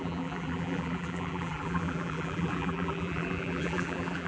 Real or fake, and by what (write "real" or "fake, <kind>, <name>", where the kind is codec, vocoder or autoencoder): fake, vocoder, BigVGAN v2